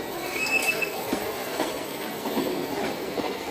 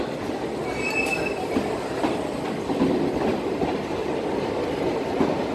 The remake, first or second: first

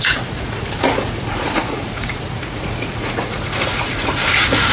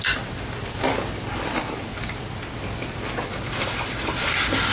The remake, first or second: first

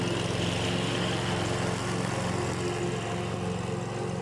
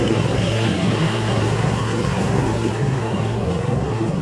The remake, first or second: second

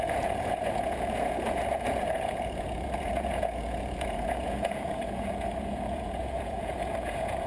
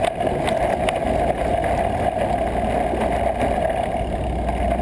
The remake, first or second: first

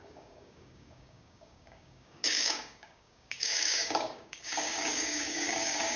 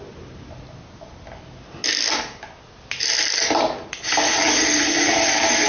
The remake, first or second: first